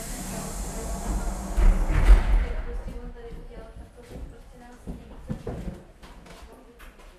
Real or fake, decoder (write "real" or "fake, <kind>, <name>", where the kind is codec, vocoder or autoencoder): real